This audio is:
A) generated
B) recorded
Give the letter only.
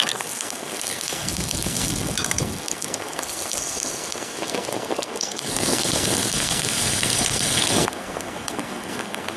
A